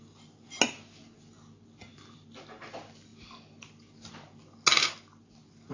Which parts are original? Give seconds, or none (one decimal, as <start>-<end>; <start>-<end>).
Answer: 0.0-1.9; 2.4-5.7